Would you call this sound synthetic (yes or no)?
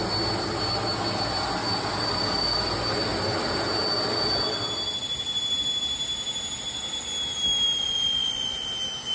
no